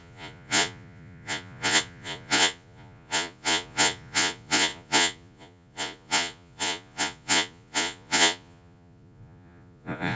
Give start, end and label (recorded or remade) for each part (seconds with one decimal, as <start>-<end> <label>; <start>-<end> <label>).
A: 0.0-10.2 remade